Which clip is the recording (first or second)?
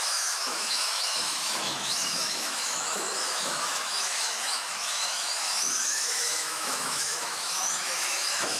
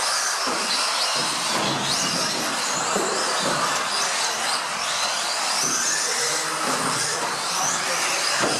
second